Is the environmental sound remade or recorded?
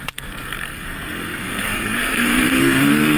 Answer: remade